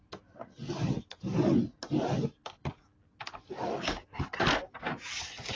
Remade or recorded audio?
recorded